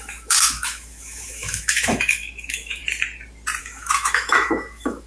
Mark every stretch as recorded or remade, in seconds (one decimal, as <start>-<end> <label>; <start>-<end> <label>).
0.0-2.8 remade; 2.8-3.6 recorded; 3.6-5.1 remade